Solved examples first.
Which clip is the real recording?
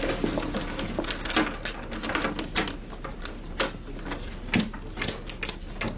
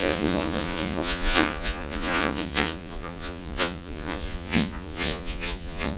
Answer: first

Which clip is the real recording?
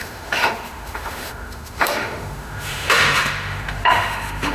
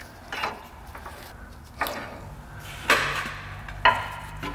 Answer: second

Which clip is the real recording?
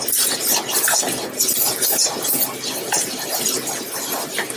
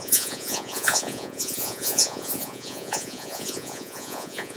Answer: first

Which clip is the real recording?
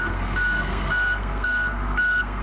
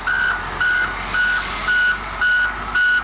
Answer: second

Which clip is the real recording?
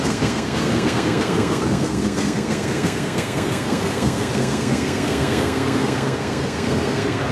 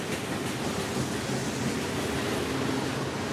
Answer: second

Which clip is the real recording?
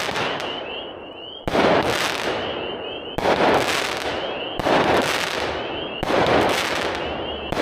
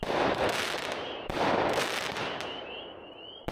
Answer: first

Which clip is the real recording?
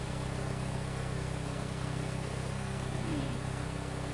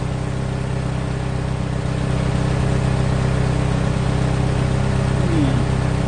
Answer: second